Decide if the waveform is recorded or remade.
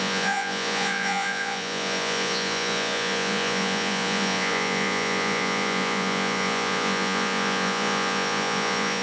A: remade